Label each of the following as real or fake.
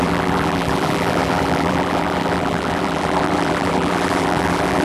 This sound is fake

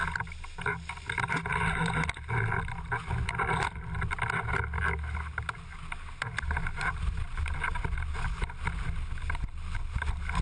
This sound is real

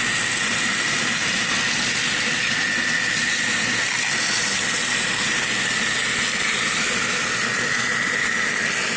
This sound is real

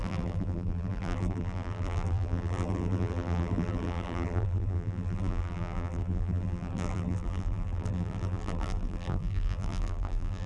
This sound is fake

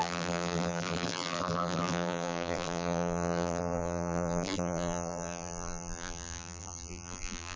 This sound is fake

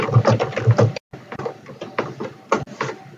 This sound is real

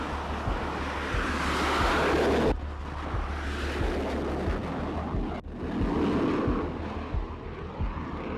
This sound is real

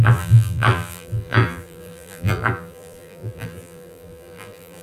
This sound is fake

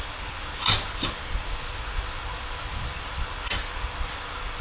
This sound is real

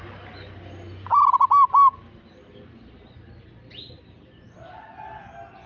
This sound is real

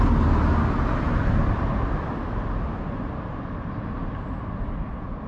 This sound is real